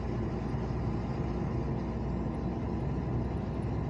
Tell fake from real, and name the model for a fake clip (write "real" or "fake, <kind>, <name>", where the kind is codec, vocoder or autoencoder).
real